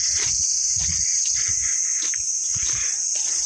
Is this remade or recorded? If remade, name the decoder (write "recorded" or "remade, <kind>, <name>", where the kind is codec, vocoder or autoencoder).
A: remade, vocoder, Vocos